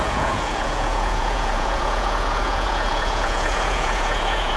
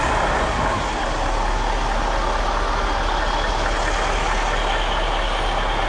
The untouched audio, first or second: second